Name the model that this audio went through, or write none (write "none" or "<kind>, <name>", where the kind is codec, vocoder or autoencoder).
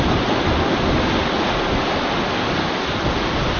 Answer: none